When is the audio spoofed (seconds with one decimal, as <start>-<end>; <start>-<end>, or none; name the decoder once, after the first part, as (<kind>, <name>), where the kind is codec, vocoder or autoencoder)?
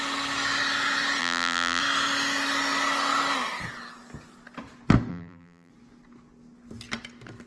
1.2-1.8 (vocoder, BigVGAN v2); 5.1-5.7